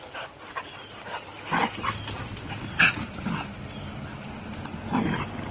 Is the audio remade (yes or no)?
no